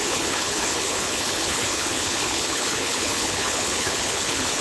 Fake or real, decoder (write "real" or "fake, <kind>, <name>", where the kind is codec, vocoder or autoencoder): fake, codec, HILCodec